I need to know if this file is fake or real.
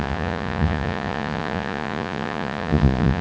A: fake